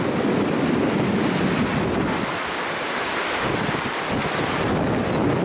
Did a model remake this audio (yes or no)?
no